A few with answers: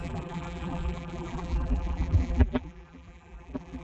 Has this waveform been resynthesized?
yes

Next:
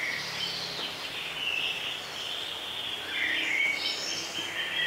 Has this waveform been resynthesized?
no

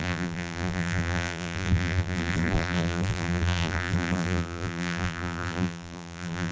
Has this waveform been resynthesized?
yes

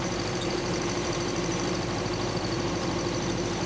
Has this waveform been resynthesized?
yes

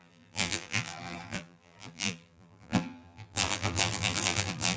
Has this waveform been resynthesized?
yes